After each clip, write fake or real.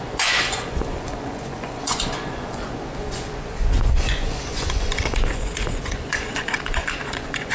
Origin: fake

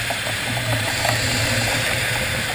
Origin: fake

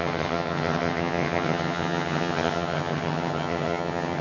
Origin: fake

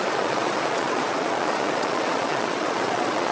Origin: fake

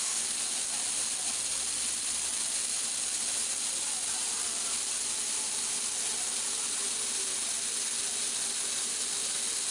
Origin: real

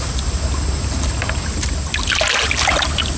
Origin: real